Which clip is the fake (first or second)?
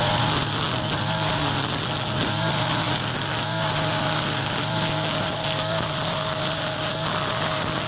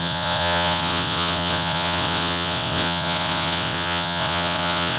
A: second